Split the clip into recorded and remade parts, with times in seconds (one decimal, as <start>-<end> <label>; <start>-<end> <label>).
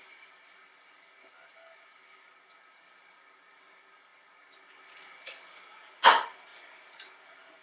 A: 0.0-7.6 remade